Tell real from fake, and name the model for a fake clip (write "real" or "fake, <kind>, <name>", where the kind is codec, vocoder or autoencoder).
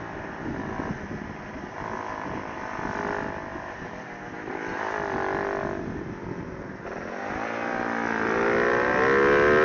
real